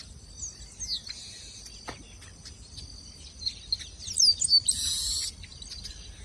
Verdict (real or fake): real